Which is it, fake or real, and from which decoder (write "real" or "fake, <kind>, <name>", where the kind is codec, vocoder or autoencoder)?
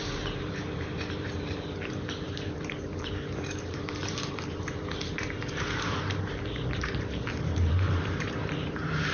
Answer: fake, vocoder, BigVGAN v2